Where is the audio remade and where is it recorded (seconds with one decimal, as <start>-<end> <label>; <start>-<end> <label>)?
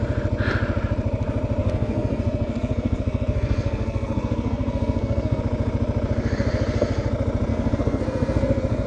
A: 0.0-1.6 recorded; 1.6-5.4 remade; 5.4-7.5 recorded; 7.5-8.9 remade